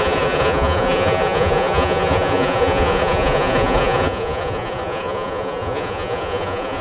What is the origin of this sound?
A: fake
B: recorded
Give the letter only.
A